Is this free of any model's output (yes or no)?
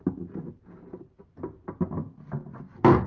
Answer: yes